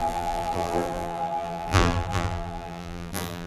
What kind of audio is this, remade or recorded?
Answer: remade